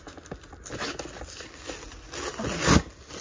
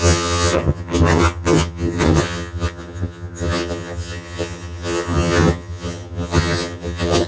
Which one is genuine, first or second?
first